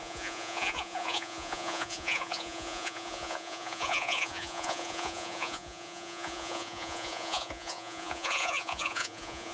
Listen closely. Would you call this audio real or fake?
fake